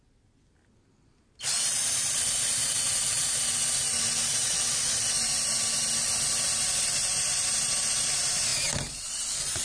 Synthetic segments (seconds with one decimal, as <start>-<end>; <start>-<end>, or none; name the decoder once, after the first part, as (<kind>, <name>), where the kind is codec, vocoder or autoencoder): none